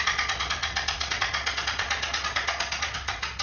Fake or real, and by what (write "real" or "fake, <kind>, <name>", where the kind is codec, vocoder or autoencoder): fake, vocoder, Vocos